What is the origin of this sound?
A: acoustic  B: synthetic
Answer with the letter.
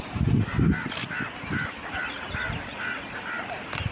A